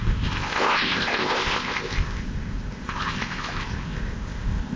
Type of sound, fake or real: fake